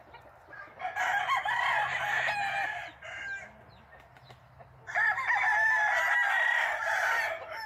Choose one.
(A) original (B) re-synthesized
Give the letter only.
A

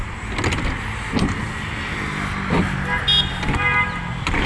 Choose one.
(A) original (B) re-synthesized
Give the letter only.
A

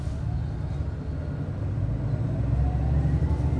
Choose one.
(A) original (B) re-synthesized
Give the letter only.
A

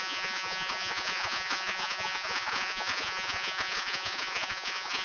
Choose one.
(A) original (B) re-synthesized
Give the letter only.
B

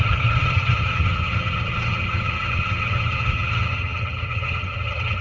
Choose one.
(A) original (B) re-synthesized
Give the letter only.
B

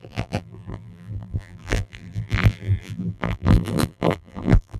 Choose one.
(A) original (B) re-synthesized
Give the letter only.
B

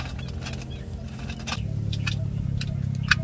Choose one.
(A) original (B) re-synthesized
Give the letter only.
A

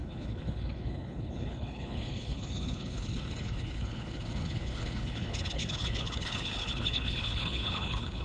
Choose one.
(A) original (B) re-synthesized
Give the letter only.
B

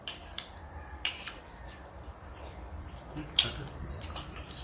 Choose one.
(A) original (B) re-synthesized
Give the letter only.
B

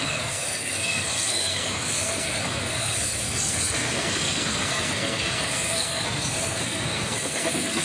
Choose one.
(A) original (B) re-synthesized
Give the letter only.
B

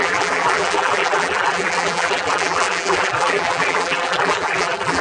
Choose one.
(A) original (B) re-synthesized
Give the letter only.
B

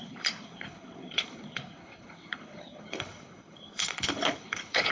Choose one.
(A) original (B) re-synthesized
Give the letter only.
B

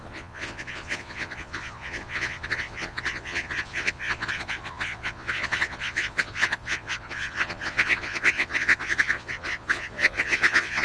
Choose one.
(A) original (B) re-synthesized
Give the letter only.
B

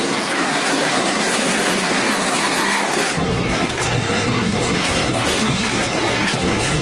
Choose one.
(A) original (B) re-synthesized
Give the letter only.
B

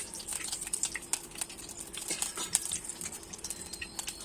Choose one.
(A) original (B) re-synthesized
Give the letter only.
B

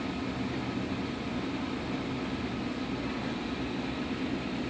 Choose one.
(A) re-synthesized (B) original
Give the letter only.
B